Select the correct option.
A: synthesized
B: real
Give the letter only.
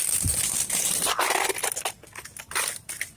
B